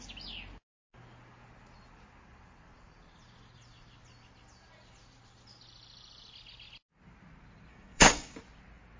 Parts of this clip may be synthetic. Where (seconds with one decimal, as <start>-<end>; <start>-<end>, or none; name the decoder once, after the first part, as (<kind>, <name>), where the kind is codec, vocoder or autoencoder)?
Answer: 7.7-8.4 (codec, DAC)